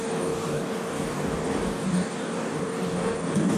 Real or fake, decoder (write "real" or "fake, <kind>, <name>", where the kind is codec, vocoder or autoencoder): fake, codec, DAC